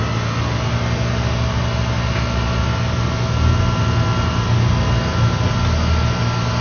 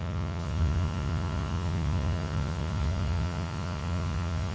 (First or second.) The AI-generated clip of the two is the second